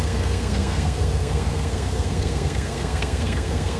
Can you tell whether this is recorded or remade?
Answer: remade